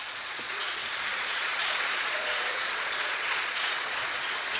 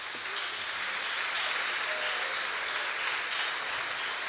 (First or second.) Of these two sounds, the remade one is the first